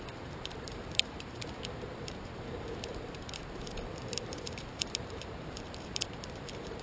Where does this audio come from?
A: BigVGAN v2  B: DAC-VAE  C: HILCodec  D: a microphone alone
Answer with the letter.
A